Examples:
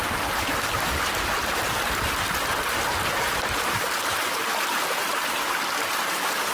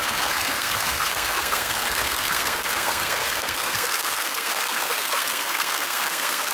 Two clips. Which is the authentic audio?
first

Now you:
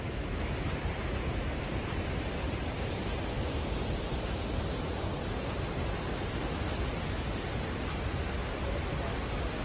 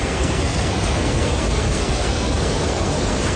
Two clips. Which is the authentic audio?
first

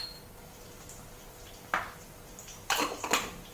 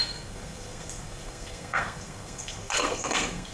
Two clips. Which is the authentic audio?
first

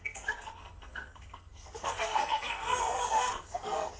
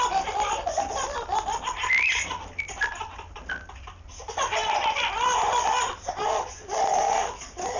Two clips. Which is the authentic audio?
second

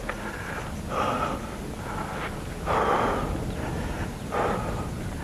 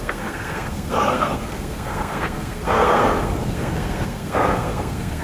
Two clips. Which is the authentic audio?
first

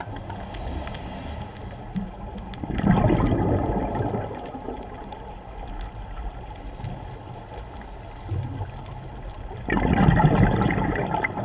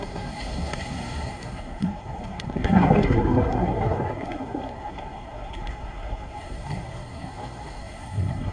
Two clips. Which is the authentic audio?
first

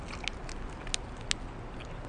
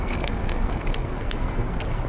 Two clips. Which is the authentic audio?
first